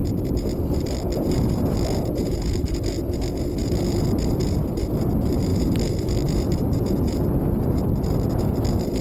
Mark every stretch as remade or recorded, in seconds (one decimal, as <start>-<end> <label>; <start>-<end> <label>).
0.0-2.2 remade; 2.2-3.6 recorded; 3.6-4.4 remade; 4.4-5.5 recorded; 5.5-8.3 remade; 8.3-9.0 recorded